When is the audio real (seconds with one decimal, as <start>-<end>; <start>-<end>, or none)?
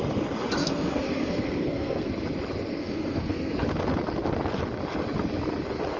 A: 0.0-0.6; 2.1-2.7; 3.5-6.0